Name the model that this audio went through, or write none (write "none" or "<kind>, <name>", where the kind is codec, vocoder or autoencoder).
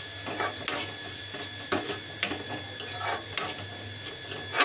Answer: none